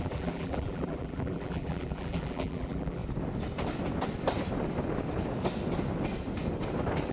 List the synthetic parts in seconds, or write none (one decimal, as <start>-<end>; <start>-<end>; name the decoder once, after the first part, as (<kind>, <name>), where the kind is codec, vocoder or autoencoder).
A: 0.0-3.0 (vocoder, BigVGAN v2)